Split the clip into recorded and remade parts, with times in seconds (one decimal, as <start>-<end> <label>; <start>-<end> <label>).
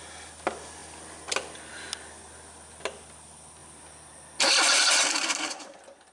0.0-6.1 recorded